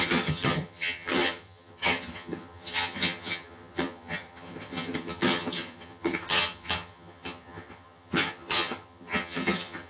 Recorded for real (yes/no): no